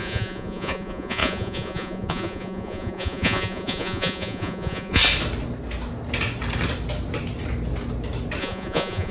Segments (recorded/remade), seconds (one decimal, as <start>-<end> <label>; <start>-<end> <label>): 0.0-5.0 remade; 5.0-8.4 recorded; 8.4-9.1 remade